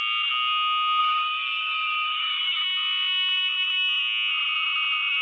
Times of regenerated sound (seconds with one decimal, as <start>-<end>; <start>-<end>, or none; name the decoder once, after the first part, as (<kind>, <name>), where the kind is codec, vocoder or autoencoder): 1.0-2.6 (codec, DAC)